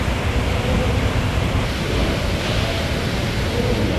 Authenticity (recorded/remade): recorded